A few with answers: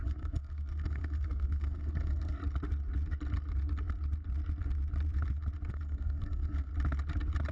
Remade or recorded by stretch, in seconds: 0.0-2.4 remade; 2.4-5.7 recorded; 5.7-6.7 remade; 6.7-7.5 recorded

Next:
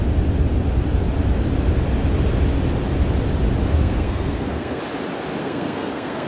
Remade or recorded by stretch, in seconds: 0.0-3.7 recorded; 3.7-4.8 remade; 4.8-5.4 recorded; 5.4-6.3 remade

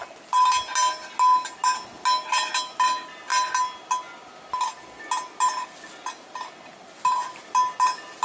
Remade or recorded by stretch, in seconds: 0.0-8.2 recorded

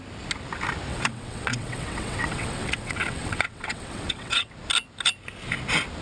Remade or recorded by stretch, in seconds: 0.0-0.9 recorded; 0.9-4.5 remade; 4.5-6.0 recorded

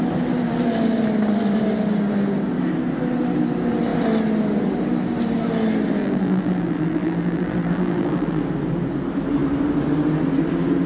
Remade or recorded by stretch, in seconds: 0.0-6.0 recorded; 6.0-8.4 remade; 8.4-10.9 recorded

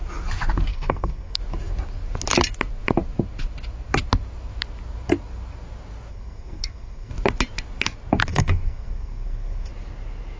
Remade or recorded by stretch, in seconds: 0.0-0.7 recorded; 0.7-1.4 remade; 1.4-6.1 recorded; 6.1-7.1 remade; 7.1-8.3 recorded; 8.3-9.7 remade; 9.7-10.4 recorded

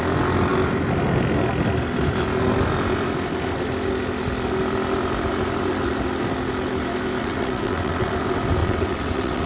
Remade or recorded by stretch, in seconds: 0.0-7.2 recorded; 7.2-8.1 remade; 8.1-8.6 recorded; 8.6-9.5 remade